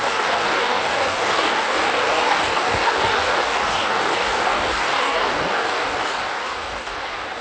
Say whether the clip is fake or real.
fake